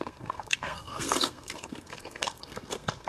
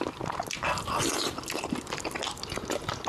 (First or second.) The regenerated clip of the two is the first